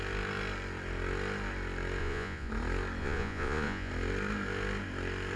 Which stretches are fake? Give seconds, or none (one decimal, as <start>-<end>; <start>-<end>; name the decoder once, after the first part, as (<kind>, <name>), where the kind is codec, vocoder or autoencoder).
2.0-2.5 (vocoder, Vocos); 3.0-3.9